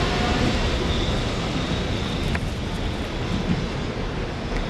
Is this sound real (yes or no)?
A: yes